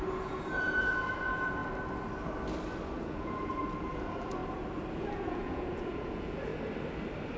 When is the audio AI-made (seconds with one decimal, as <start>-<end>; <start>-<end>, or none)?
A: 0.0-1.6; 3.0-4.4; 4.9-6.5